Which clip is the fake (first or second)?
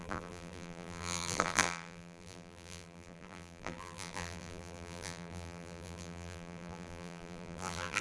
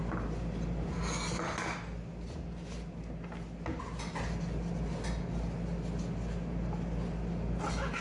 first